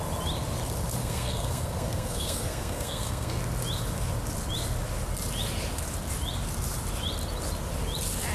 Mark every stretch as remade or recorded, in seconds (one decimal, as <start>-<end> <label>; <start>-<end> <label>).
0.0-1.0 recorded; 1.0-3.4 remade; 3.4-8.3 recorded

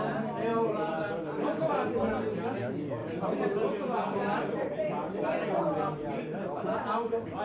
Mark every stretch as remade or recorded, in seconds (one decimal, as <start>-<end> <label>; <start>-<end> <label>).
0.0-0.5 recorded; 0.5-1.7 remade; 1.7-3.0 recorded; 3.0-7.4 remade

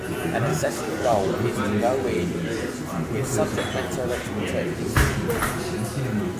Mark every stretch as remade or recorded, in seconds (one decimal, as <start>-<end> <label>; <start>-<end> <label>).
0.0-0.5 recorded; 0.5-1.3 remade; 1.3-6.4 recorded

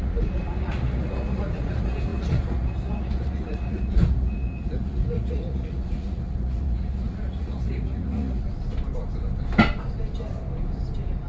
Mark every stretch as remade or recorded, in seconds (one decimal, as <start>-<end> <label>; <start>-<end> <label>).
0.0-8.4 remade; 8.4-11.3 recorded